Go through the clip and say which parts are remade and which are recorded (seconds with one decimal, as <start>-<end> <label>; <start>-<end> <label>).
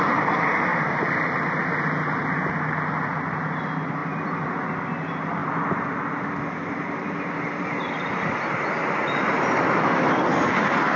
0.0-0.7 recorded; 0.7-1.7 remade; 1.7-4.0 recorded; 4.0-4.6 remade; 4.6-11.0 recorded